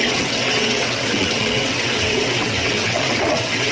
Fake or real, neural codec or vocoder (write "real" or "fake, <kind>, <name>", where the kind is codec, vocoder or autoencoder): fake, vocoder, WaveNeXt